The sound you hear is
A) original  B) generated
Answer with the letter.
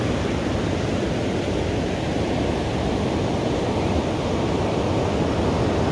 A